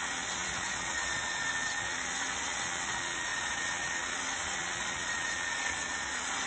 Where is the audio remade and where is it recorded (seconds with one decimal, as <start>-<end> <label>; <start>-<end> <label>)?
0.0-6.5 remade